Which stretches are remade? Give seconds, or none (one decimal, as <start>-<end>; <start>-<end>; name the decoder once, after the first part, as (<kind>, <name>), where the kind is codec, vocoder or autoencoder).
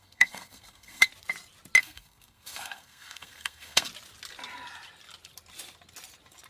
0.0-1.1 (codec, SNAC); 1.8-3.9